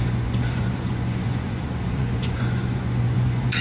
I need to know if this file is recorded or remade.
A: remade